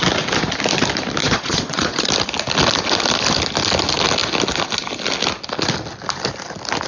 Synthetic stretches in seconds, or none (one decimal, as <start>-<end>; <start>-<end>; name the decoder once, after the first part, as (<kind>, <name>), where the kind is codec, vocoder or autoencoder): 1.2-2.1 (vocoder, Vocos)